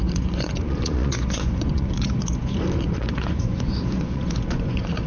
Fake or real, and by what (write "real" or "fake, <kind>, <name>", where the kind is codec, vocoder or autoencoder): fake, vocoder, Vocos